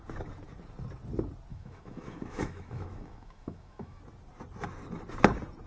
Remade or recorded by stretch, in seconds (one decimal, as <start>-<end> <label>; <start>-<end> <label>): 0.0-1.5 recorded; 1.5-4.0 remade; 4.0-5.7 recorded